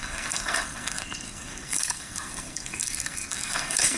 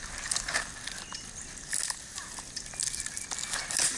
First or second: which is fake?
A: first